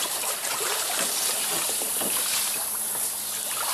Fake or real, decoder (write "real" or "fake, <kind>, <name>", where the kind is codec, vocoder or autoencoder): real